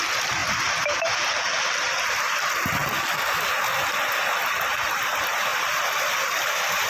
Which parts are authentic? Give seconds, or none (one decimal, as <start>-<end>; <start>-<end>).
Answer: 2.8-4.4; 5.5-6.0